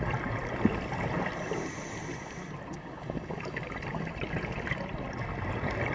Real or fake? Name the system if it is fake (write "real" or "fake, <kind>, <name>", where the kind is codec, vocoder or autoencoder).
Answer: real